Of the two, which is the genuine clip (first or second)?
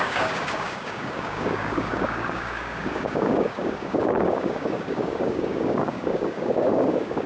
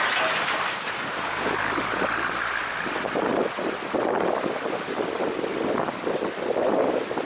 second